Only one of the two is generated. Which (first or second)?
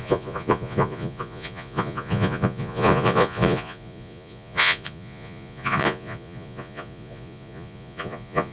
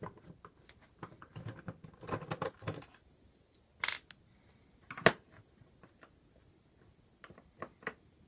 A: first